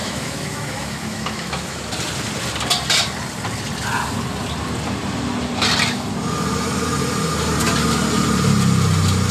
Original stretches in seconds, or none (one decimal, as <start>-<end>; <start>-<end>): 1.9-9.3